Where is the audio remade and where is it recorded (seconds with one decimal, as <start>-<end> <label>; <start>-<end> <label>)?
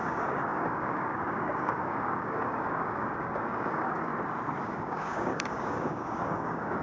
0.0-4.1 remade; 4.1-4.6 recorded; 4.6-6.8 remade